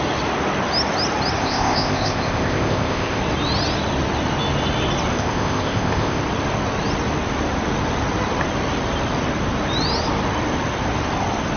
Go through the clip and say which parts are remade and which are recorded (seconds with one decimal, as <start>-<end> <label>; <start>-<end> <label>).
0.0-1.4 recorded; 1.4-3.2 remade; 3.2-5.1 recorded; 5.1-6.2 remade; 6.2-11.6 recorded